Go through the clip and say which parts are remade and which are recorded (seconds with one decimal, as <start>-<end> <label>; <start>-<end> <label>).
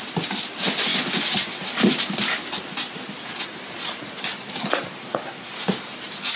0.0-5.0 recorded; 5.0-5.5 remade; 5.5-6.4 recorded